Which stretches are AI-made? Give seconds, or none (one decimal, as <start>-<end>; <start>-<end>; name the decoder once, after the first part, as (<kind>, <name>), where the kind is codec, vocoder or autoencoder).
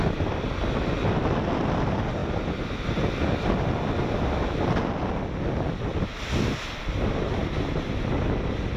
none